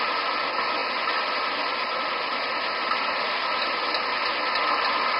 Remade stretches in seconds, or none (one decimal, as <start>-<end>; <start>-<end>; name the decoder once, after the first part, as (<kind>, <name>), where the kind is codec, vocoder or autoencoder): 0.8-3.9 (vocoder, BigVGAN v2)